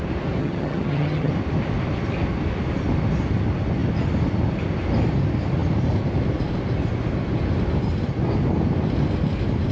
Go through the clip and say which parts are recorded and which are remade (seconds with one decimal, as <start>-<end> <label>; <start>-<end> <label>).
0.0-0.4 recorded; 0.4-1.3 remade; 1.3-9.7 recorded